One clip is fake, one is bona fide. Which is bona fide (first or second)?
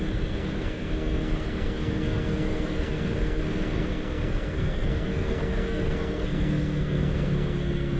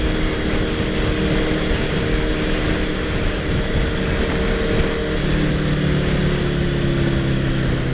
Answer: second